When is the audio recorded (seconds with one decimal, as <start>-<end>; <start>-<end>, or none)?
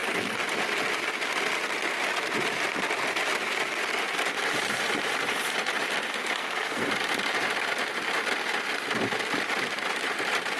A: 0.0-6.2; 6.9-10.6